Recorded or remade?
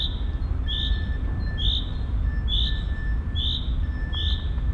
recorded